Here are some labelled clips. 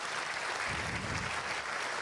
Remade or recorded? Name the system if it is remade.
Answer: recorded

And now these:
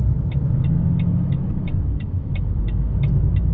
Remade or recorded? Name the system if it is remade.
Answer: remade, autoencoder, DAC-VAE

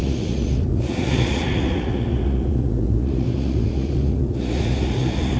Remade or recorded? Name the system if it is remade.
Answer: remade, vocoder, Vocos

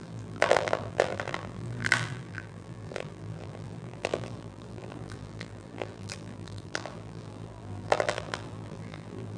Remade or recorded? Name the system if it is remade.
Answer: remade, vocoder, BigVGAN v2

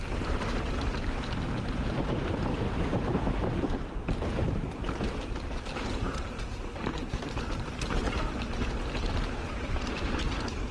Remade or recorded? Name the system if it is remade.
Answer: remade, vocoder, BigVGAN v2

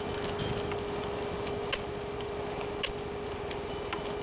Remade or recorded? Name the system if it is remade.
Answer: recorded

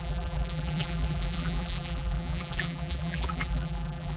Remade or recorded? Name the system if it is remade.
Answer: remade, vocoder, BigVGAN v2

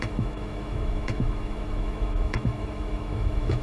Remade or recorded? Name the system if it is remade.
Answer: remade, autoencoder, DAC-VAE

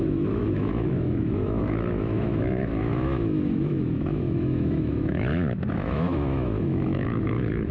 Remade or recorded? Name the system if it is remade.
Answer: remade, autoencoder, DAC-VAE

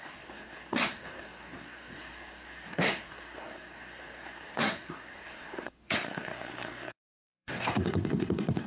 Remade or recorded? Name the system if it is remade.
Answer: remade, codec, SNAC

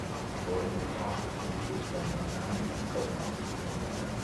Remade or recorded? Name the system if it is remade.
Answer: recorded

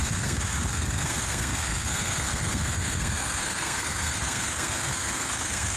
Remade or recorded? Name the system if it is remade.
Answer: remade, codec, SNAC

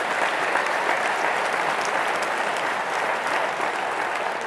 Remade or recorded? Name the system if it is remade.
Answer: recorded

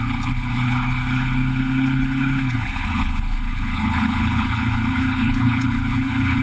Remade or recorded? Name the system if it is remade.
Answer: remade, codec, HILCodec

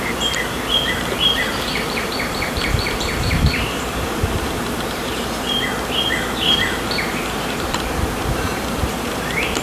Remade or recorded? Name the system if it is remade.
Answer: remade, vocoder, BigVGAN v2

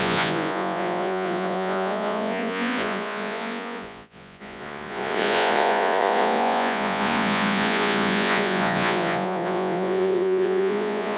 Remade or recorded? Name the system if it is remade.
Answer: remade, vocoder, Vocos